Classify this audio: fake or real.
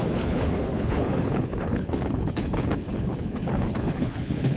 fake